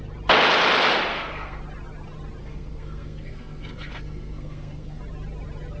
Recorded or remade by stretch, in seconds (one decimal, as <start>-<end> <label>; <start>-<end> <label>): 0.0-1.1 recorded; 1.1-1.6 remade; 1.6-2.4 recorded; 2.4-5.0 remade; 5.0-5.8 recorded

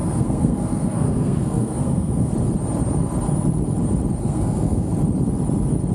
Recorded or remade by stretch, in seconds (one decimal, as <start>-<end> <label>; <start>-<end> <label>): 0.0-2.3 remade; 2.3-4.2 recorded; 4.2-4.9 remade; 4.9-5.9 recorded

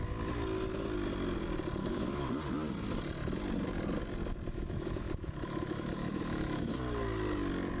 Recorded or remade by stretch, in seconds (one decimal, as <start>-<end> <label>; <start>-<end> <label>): 0.0-1.8 recorded; 1.8-2.3 remade; 2.3-4.5 recorded; 4.5-6.7 remade; 6.7-7.8 recorded

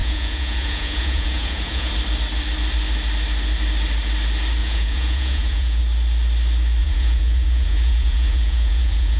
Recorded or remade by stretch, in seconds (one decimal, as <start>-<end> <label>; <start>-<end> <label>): 0.0-1.9 remade; 1.9-4.6 recorded; 4.6-5.8 remade; 5.8-6.8 recorded; 6.8-9.2 remade